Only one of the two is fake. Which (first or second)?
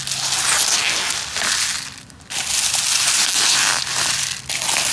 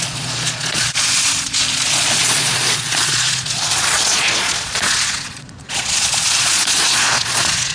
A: second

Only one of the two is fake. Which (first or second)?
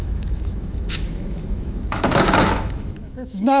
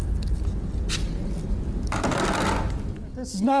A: first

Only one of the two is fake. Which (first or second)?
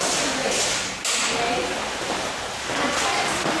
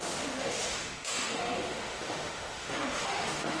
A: second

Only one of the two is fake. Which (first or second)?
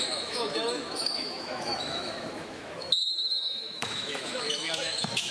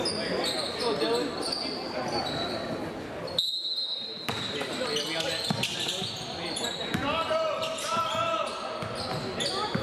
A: first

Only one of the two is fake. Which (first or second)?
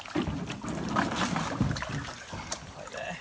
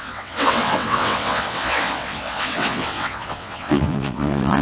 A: second